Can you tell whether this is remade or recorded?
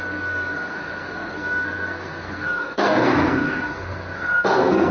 remade